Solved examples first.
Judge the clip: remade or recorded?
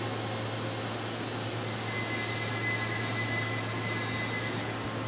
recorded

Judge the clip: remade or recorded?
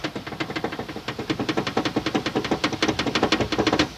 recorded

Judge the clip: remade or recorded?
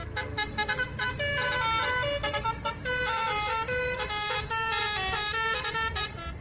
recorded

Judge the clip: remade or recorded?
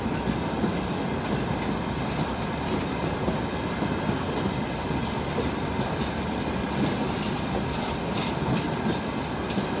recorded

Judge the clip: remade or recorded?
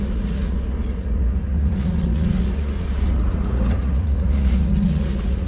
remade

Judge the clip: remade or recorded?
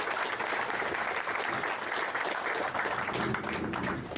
recorded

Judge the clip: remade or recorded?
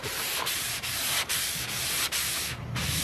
remade